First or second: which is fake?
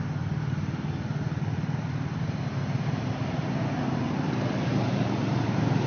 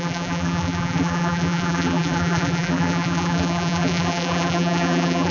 second